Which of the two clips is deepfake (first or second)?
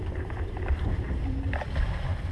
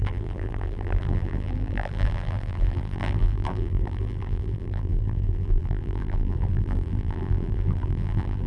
second